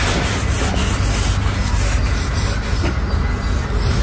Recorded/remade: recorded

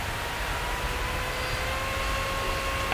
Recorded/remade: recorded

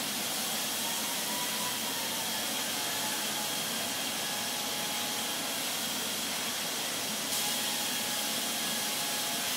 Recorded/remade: recorded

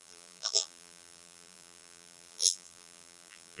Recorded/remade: remade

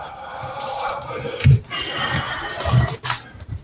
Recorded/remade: remade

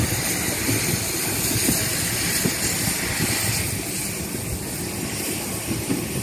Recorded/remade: recorded